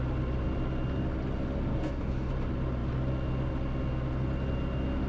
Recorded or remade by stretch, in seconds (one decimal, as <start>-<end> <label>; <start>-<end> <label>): 0.0-1.7 recorded; 1.7-2.3 remade; 2.3-5.1 recorded